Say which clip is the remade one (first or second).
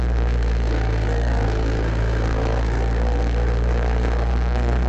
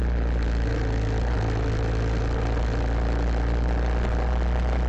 first